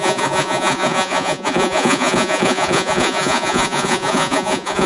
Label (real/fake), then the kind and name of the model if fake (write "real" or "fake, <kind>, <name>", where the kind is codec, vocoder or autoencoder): fake, vocoder, Vocos